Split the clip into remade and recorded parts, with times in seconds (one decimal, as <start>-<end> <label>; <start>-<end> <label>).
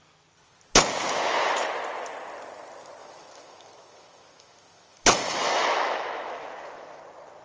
0.0-3.0 recorded; 3.0-7.0 remade; 7.0-7.4 recorded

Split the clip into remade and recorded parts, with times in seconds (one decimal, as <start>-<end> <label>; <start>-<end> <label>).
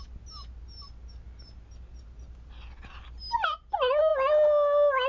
0.0-5.1 recorded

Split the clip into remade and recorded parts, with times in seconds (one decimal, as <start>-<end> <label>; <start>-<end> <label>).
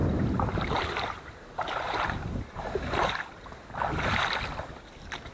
0.0-3.1 remade; 3.1-5.3 recorded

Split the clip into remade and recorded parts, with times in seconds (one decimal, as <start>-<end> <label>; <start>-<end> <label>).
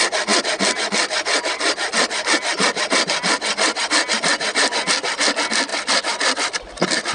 0.0-5.7 recorded; 5.7-7.1 remade